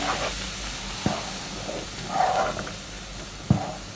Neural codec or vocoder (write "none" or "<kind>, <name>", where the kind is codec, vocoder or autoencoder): none